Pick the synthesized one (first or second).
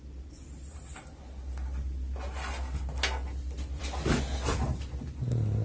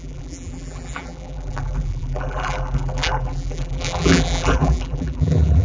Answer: second